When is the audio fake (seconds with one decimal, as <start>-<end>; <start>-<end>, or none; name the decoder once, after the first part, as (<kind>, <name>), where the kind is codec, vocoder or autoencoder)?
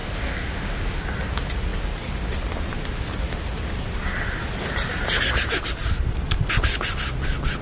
0.0-1.0 (autoencoder, DAC-VAE)